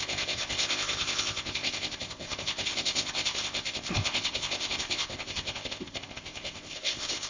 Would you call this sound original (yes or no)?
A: no